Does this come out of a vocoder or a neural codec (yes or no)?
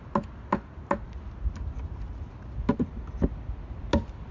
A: no